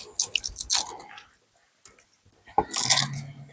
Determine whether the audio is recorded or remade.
recorded